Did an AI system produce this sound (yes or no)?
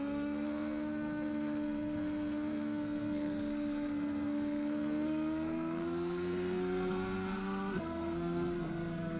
yes